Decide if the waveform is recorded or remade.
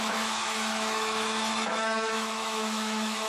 remade